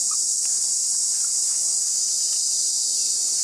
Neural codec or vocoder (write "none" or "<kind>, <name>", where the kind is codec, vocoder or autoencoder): none